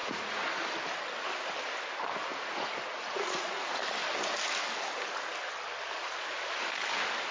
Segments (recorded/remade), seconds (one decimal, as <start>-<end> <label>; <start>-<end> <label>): 0.0-0.6 remade; 0.6-2.3 recorded; 2.3-3.8 remade; 3.8-7.3 recorded